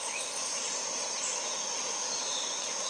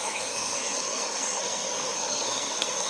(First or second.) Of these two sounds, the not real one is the second